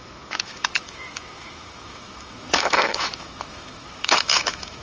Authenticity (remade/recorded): remade